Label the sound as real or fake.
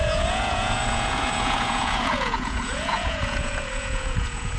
fake